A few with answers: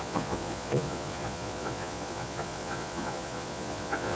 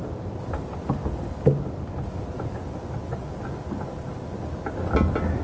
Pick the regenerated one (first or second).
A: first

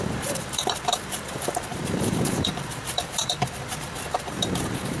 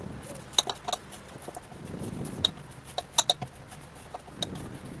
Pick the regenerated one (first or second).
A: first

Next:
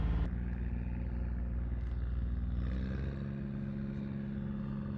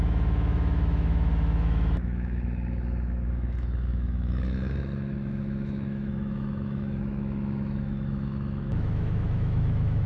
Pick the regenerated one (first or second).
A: second